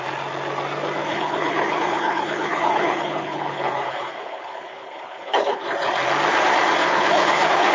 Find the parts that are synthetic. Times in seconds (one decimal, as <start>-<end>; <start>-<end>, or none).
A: 1.0-5.6; 6.8-7.7